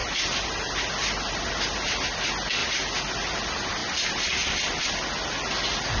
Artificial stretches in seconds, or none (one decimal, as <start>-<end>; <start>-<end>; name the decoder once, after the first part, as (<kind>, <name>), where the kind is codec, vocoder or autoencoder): none